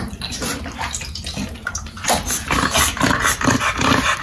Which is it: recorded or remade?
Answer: recorded